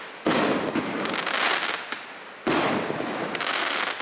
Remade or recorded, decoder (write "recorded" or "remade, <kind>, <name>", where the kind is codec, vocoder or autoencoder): recorded